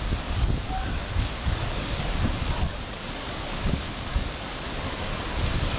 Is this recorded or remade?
remade